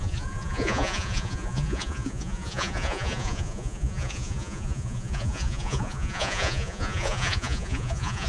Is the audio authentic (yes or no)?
no